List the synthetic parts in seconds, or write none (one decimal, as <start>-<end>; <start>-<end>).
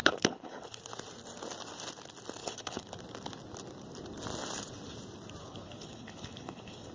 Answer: 0.0-0.8; 2.4-2.9; 5.4-6.9